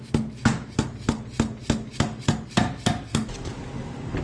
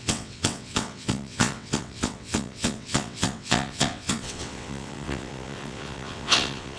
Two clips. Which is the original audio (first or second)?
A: first